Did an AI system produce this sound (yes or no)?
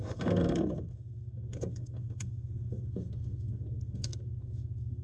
yes